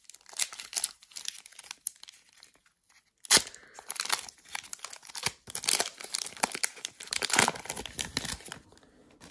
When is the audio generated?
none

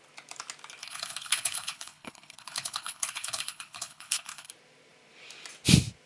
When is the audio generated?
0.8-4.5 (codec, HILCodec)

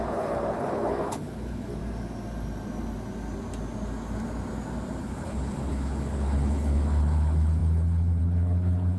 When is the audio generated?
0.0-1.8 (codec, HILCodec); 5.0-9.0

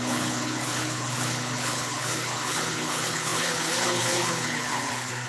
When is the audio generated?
0.0-5.3 (codec, HILCodec)

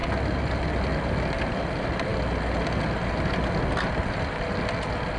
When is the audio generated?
none

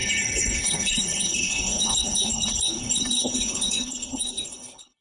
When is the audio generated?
0.0-5.0 (codec, HILCodec)

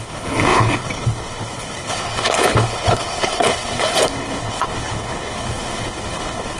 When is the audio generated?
0.0-6.6 (codec, HILCodec)

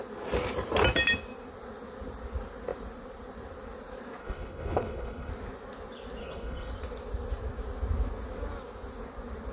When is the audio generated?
4.2-5.3 (codec, HILCodec); 6.2-6.7